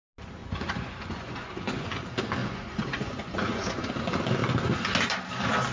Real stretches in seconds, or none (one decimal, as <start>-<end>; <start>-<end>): 0.0-0.4; 2.0-2.4; 3.9-5.7